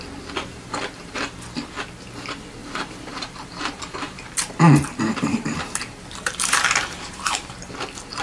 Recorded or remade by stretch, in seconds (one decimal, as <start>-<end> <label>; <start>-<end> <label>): 0.0-0.5 recorded; 0.5-1.2 remade; 1.2-2.6 recorded; 2.6-7.5 remade; 7.5-8.2 recorded